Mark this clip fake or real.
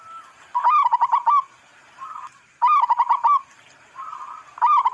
real